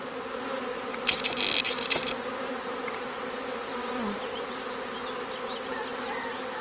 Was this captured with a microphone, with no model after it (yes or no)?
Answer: yes